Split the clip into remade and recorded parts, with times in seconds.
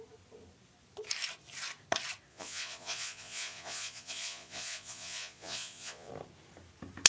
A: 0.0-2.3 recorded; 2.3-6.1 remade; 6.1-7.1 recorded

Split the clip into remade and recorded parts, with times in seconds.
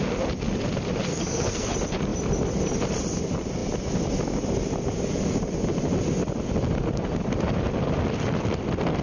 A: 0.0-1.1 recorded; 1.1-1.7 remade; 1.7-9.0 recorded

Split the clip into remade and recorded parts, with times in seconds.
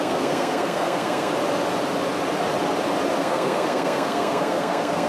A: 0.0-1.3 remade; 1.3-3.2 recorded; 3.2-5.1 remade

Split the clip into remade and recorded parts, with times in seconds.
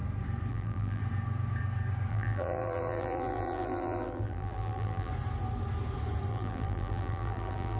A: 0.0-0.5 recorded; 0.5-1.0 remade; 1.0-2.1 recorded; 2.1-5.1 remade; 5.1-6.3 recorded; 6.3-7.8 remade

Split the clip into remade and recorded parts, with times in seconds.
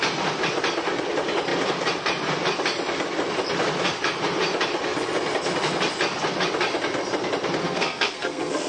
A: 0.0-7.6 recorded; 7.6-8.7 remade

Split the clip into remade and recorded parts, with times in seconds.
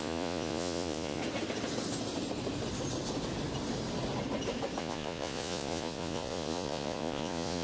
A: 0.0-1.2 remade; 1.2-4.8 recorded; 4.8-7.6 remade